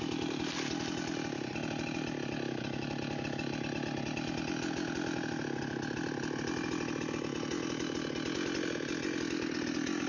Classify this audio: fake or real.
real